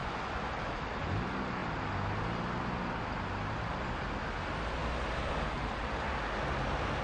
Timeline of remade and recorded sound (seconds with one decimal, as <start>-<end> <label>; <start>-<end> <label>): 0.0-0.5 remade; 0.5-7.0 recorded